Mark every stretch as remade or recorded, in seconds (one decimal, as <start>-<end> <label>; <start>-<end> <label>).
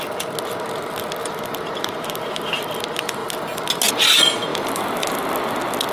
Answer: 0.0-1.2 recorded; 1.2-2.5 remade; 2.5-4.5 recorded; 4.5-5.2 remade; 5.2-5.9 recorded